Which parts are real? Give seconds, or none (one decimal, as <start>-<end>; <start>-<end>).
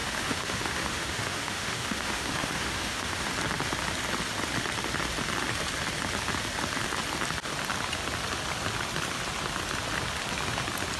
3.3-11.0